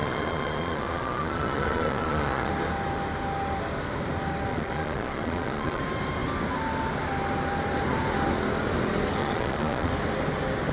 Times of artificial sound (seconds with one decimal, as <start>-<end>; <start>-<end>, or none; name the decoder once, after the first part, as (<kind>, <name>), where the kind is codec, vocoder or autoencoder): 0.0-2.5 (vocoder, Vocos); 4.5-5.8; 9.2-9.9